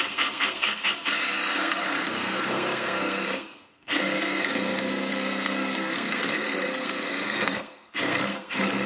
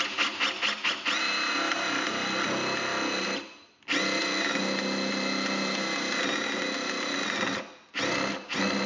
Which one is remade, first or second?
first